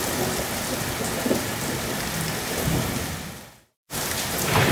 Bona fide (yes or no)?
yes